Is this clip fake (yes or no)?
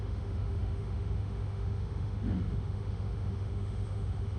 yes